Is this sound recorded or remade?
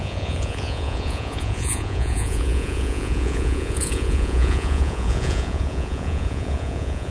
remade